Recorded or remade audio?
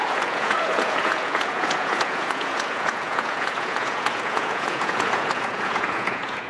remade